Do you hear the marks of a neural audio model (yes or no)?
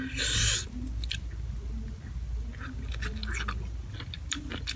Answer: no